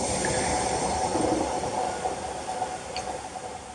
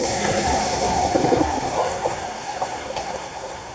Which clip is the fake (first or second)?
second